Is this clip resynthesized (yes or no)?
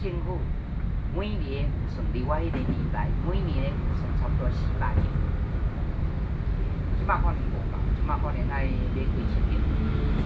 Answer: no